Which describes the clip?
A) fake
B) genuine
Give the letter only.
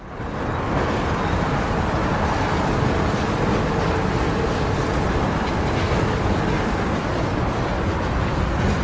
B